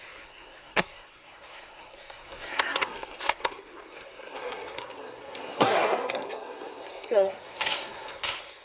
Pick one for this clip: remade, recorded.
remade